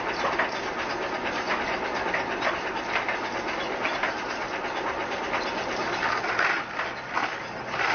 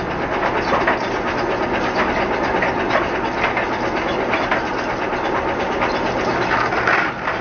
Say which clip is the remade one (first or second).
first